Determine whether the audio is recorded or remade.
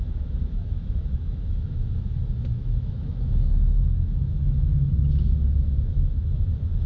remade